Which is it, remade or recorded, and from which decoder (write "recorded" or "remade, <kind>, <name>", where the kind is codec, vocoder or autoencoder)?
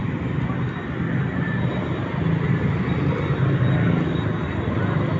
recorded